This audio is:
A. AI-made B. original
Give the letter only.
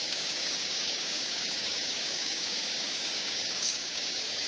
A